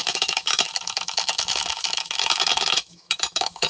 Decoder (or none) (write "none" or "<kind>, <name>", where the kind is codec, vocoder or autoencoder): autoencoder, DAC-VAE